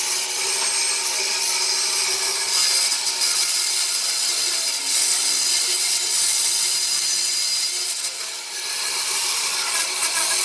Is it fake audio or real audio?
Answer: real